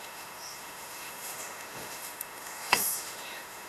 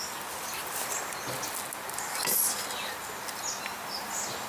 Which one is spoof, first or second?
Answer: first